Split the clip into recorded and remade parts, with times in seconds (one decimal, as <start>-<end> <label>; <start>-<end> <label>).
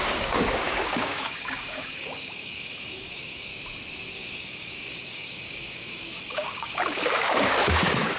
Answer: 0.0-3.5 remade; 3.5-4.1 recorded; 4.1-8.2 remade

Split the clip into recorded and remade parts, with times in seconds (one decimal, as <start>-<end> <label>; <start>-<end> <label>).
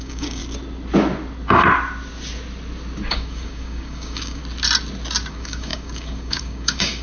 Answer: 0.0-0.4 remade; 0.4-3.1 recorded; 3.1-4.4 remade; 4.4-5.3 recorded; 5.3-7.0 remade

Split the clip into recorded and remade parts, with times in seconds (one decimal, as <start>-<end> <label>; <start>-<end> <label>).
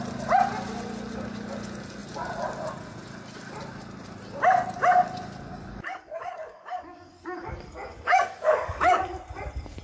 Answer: 0.0-5.5 recorded; 5.5-9.0 remade; 9.0-9.8 recorded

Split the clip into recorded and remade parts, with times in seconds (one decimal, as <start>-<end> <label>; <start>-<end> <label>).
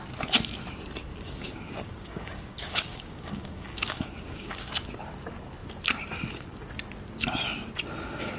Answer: 0.0-1.1 recorded; 1.1-4.7 remade; 4.7-8.4 recorded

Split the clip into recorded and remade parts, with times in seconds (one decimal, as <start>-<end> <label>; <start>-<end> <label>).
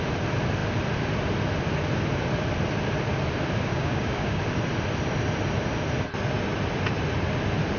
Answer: 0.0-3.7 recorded; 3.7-4.4 remade; 4.4-7.8 recorded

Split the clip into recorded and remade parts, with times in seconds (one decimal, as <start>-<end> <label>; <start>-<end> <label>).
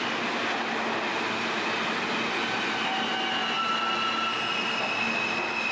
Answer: 0.0-5.7 recorded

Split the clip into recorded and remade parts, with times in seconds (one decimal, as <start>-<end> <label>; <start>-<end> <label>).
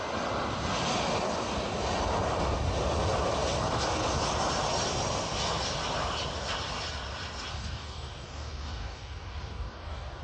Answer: 0.0-7.5 recorded; 7.5-10.2 remade